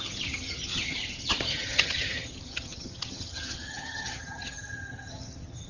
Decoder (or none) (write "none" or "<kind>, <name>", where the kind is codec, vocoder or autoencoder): vocoder, HiFi-GAN